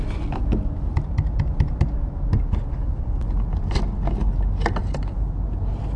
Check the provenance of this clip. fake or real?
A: real